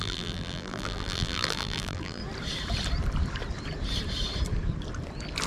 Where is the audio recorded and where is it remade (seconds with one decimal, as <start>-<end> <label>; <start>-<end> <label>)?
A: 0.0-2.2 remade; 2.2-5.5 recorded